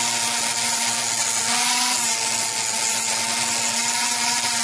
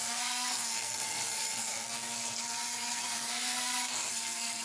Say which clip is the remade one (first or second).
second